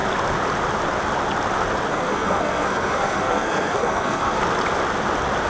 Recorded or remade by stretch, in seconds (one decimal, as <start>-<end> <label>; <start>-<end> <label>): 0.0-1.9 recorded; 1.9-4.4 remade; 4.4-5.5 recorded